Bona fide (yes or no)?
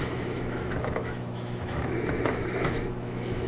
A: no